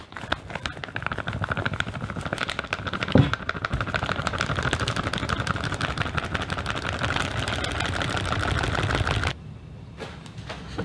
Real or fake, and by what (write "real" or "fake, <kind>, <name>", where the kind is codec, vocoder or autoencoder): real